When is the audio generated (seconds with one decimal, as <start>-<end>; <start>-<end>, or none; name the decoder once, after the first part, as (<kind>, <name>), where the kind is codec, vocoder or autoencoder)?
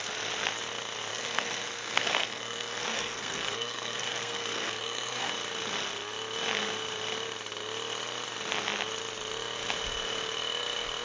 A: 1.1-5.3 (codec, SNAC)